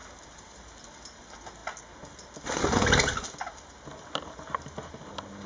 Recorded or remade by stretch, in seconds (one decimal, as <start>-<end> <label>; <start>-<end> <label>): 0.0-5.5 recorded